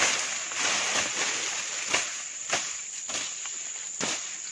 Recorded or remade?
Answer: recorded